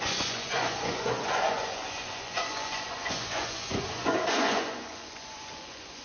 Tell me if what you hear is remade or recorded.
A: remade